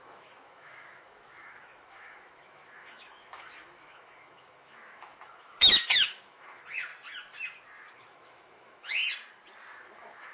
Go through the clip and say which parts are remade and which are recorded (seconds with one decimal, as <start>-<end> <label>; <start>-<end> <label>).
0.0-6.9 remade; 6.9-7.9 recorded; 7.9-9.0 remade; 9.0-9.8 recorded; 9.8-10.3 remade